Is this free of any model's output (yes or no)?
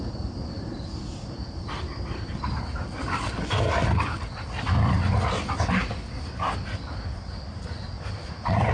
no